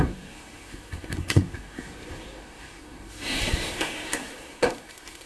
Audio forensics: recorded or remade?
remade